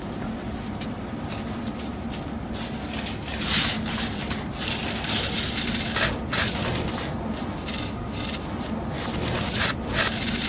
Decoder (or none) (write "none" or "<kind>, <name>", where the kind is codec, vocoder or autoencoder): none